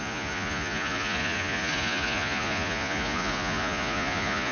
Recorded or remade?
remade